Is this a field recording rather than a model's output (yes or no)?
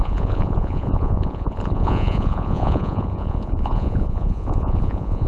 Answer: no